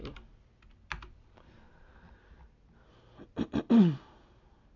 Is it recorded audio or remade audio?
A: remade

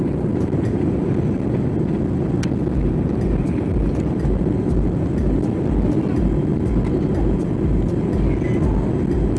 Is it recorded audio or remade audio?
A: recorded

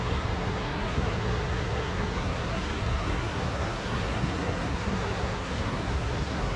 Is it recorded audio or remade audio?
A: remade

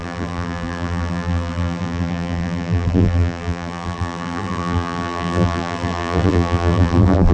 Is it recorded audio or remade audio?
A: remade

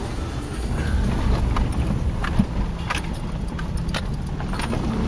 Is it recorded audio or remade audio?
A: recorded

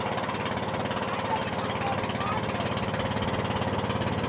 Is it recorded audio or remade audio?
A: recorded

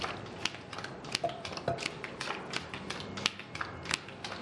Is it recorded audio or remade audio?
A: recorded